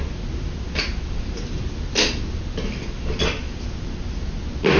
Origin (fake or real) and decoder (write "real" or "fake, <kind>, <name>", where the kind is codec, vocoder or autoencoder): real